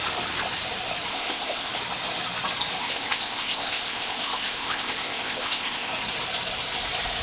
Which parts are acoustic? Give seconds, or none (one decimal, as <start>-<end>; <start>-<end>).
0.0-1.1; 1.7-2.8; 5.9-7.2